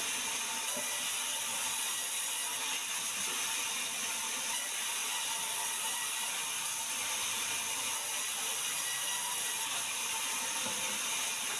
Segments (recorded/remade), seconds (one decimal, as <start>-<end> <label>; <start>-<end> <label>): 0.0-2.4 remade; 2.4-3.0 recorded; 3.0-11.6 remade